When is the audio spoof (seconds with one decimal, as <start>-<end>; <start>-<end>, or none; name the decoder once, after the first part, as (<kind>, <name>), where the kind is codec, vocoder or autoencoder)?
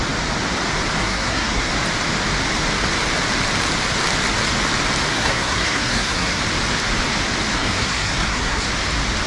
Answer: 1.0-1.7 (codec, SNAC); 5.1-6.4; 7.5-8.7